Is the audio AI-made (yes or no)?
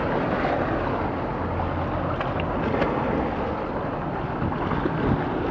no